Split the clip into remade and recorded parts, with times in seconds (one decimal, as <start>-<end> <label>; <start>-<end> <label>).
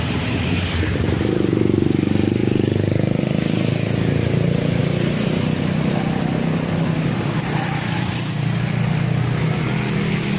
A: 0.0-10.4 recorded